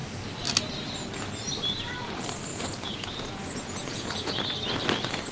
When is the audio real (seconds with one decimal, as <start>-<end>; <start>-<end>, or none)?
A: 0.0-2.5; 4.4-5.3